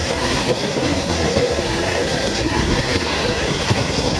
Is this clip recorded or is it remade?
remade